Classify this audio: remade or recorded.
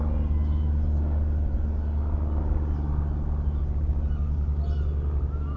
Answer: recorded